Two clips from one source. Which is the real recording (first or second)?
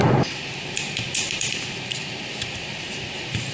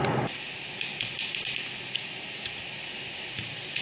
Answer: second